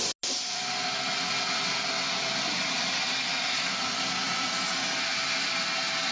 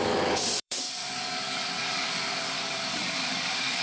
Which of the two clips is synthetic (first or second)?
second